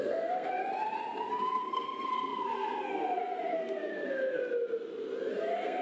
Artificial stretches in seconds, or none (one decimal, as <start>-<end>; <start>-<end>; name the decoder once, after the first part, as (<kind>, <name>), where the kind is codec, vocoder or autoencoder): 0.0-0.6 (codec, SNAC); 1.3-4.4; 5.3-5.8

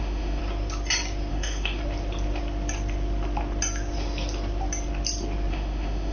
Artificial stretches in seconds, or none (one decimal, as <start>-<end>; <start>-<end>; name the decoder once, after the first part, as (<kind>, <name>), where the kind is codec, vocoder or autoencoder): 0.0-0.4 (autoencoder, DAC-VAE); 1.3-1.8; 5.5-6.1

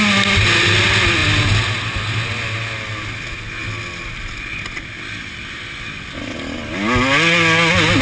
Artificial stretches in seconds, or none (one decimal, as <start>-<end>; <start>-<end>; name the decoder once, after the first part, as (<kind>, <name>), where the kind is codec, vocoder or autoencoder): none

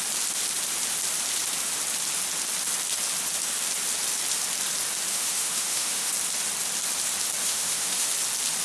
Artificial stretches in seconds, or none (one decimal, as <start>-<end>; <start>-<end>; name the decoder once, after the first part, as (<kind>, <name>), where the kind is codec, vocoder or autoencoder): 5.1-6.1 (autoencoder, DAC-VAE); 7.4-8.1

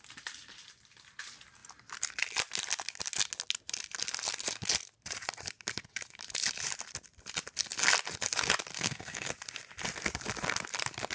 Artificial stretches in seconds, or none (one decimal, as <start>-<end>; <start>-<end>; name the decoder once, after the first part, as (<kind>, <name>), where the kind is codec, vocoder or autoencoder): 8.7-9.3 (codec, SNAC)

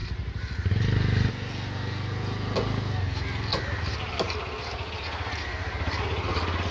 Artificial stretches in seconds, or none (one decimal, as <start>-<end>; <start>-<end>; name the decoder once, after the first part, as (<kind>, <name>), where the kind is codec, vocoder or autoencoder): none

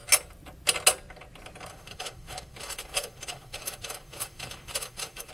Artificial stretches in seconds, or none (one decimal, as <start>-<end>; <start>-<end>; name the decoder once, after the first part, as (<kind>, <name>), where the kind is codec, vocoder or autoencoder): 1.7-5.3 (autoencoder, DAC-VAE)

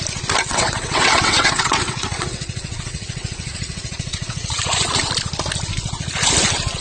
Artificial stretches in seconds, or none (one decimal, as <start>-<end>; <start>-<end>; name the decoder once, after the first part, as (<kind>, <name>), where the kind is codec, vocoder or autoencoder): 0.5-4.6 (vocoder, WaveNeXt)